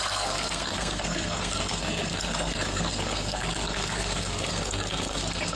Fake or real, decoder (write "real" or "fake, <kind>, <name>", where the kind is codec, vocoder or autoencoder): fake, codec, SNAC